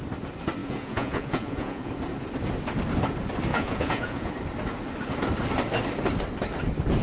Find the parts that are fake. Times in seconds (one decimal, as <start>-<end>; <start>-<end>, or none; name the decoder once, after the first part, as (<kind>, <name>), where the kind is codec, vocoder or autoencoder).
0.6-1.9 (vocoder, Vocos); 3.5-4.3